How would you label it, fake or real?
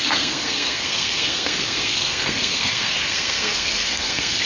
fake